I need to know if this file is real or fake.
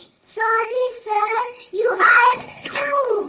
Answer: fake